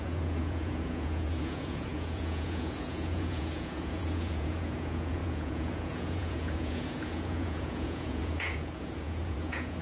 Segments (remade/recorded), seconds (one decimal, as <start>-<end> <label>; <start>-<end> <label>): 0.0-9.8 remade